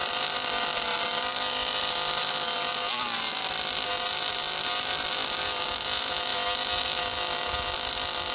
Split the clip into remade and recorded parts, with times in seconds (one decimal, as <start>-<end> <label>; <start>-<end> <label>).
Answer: 0.0-0.8 remade; 0.8-8.3 recorded